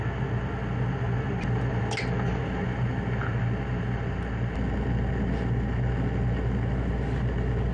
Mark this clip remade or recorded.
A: recorded